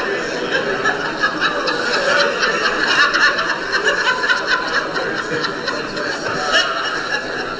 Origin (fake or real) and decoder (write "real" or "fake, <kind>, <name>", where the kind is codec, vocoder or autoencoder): real